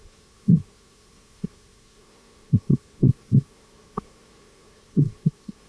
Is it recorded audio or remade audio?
remade